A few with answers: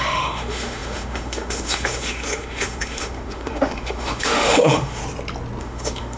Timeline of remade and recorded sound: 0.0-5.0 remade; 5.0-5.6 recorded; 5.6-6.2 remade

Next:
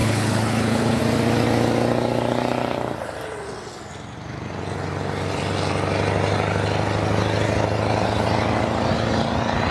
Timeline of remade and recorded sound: 0.0-1.0 remade; 1.0-9.7 recorded

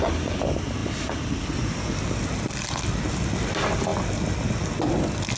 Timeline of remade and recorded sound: 0.0-5.4 recorded

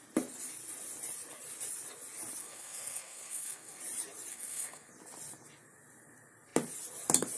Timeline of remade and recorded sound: 0.0-2.4 recorded; 2.4-3.8 remade; 3.8-4.3 recorded; 4.3-4.9 remade; 4.9-7.4 recorded

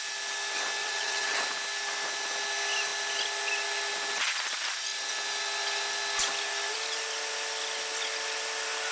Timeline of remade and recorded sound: 0.0-0.8 recorded; 0.8-1.4 remade; 1.4-8.9 recorded

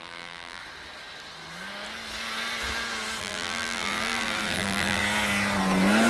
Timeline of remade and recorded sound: 0.0-0.6 remade; 0.6-3.2 recorded; 3.2-5.0 remade; 5.0-6.1 recorded

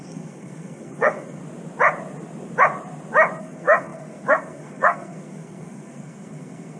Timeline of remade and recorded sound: 0.0-1.4 remade; 1.4-3.4 recorded; 3.4-6.8 remade

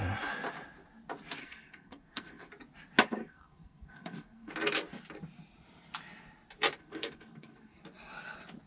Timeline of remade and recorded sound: 0.0-1.4 recorded; 1.4-2.5 remade; 2.5-3.2 recorded; 3.2-4.5 remade; 4.5-6.8 recorded; 6.8-7.8 remade; 7.8-8.7 recorded